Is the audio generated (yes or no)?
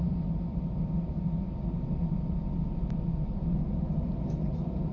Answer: no